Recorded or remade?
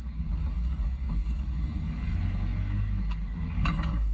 remade